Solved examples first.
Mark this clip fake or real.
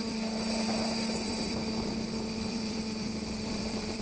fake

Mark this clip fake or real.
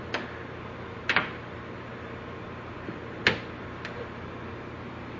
real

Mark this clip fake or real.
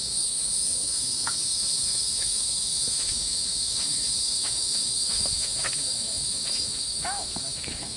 fake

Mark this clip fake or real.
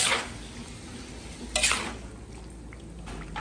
real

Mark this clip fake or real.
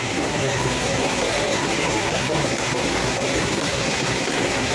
fake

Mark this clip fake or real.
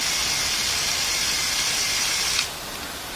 real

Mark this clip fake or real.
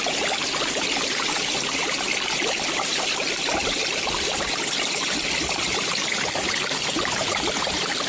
real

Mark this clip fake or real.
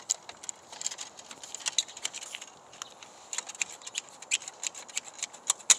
real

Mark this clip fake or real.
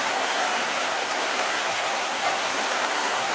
fake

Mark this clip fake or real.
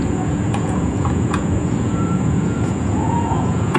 fake